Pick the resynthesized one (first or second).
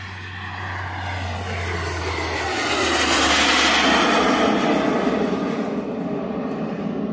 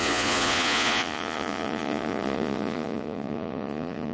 second